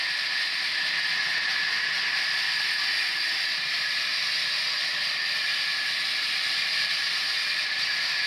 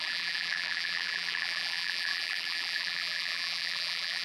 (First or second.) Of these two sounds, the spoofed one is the second